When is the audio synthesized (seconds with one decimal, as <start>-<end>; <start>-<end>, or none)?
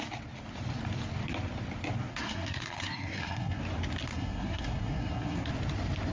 2.1-3.6; 4.1-5.5